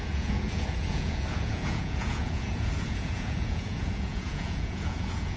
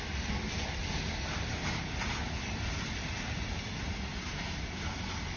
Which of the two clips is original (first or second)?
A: second